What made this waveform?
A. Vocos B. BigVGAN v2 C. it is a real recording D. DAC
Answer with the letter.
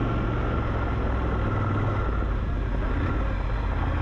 C